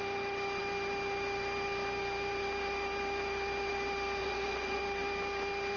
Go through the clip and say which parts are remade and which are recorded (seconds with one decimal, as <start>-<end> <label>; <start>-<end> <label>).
0.0-4.2 recorded; 4.2-4.8 remade; 4.8-5.8 recorded